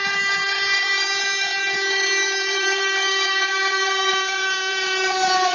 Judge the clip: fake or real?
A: fake